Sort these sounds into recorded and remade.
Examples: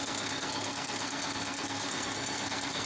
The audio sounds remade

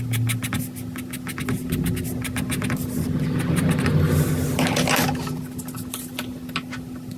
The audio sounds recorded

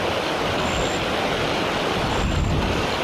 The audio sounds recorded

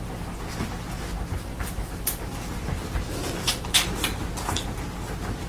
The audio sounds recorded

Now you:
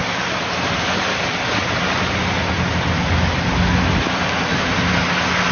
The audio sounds recorded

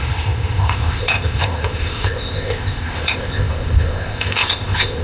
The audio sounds remade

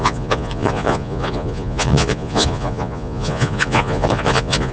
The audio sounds remade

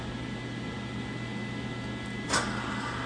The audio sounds recorded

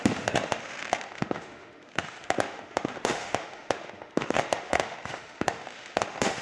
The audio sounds remade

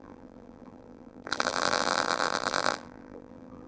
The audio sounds remade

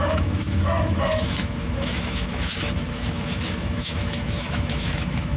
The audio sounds remade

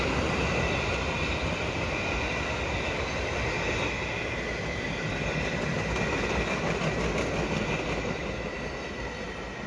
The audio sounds recorded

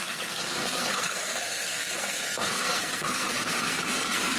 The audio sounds remade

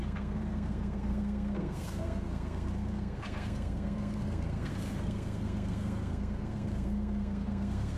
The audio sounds remade